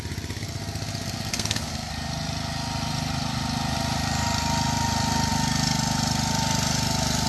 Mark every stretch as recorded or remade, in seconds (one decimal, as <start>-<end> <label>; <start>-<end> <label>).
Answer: 0.0-1.3 recorded; 1.3-1.9 remade; 1.9-7.3 recorded